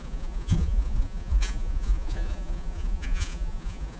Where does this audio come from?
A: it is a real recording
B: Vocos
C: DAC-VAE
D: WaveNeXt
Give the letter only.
B